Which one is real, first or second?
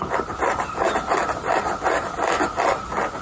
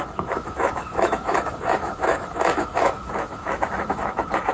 first